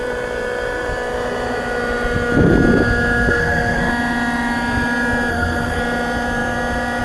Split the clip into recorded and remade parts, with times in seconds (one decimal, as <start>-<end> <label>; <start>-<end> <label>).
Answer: 0.0-3.3 recorded; 3.3-3.9 remade; 3.9-5.3 recorded; 5.3-5.8 remade; 5.8-7.0 recorded